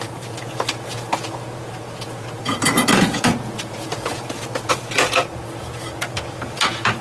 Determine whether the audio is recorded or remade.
remade